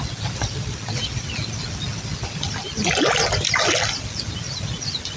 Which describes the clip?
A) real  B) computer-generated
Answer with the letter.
A